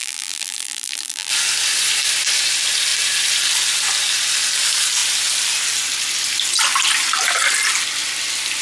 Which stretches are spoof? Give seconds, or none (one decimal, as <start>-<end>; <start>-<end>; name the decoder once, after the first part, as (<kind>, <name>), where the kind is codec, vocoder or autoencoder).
0.0-1.3 (vocoder, BigVGAN v2)